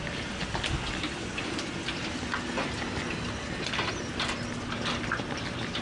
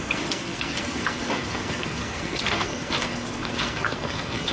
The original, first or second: first